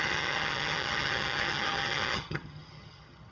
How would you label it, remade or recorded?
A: remade